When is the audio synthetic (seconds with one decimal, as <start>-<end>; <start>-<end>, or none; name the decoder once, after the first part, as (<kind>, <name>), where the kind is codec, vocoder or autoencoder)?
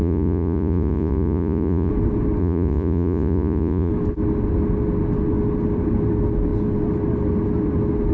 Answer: 0.0-1.9 (vocoder, Vocos); 2.4-3.9